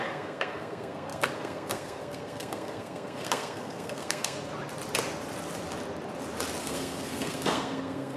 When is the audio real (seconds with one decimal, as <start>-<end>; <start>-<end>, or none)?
4.5-6.6